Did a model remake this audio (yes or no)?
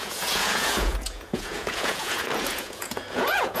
yes